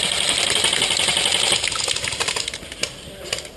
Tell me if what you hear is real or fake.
real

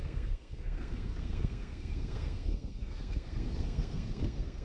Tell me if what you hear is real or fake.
fake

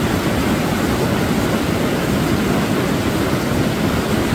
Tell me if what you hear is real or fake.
real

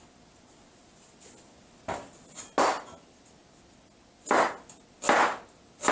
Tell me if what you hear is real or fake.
real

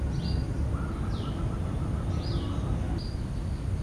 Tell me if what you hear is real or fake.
real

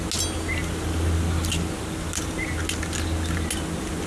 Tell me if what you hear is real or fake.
real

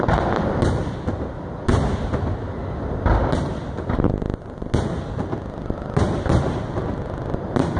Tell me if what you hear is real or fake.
real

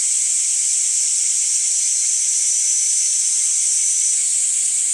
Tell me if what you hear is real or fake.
real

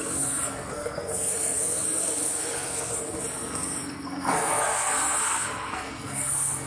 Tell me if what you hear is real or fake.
fake